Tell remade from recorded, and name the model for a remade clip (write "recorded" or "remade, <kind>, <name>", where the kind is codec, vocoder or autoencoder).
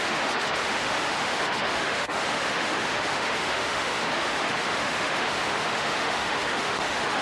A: remade, autoencoder, DAC-VAE